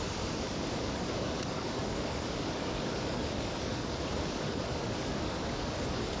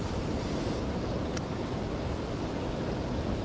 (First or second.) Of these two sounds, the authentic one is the second